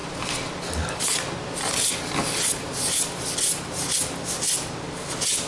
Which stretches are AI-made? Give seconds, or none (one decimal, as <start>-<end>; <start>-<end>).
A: none